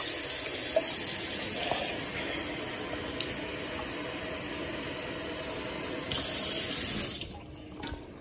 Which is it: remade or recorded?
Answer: recorded